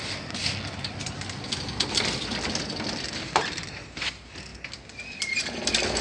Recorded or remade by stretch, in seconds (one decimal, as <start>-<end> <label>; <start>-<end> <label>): 0.0-6.0 recorded